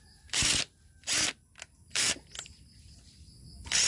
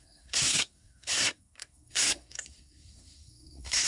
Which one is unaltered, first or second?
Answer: first